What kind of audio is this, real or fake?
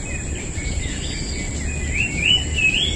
real